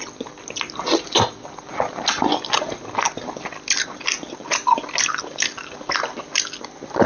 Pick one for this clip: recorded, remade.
recorded